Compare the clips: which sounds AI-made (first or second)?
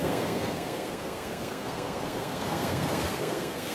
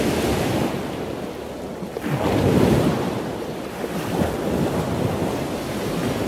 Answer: first